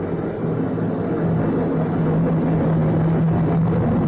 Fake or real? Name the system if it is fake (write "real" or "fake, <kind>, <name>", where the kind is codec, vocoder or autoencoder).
real